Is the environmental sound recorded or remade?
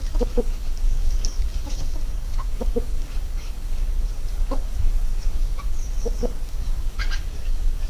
remade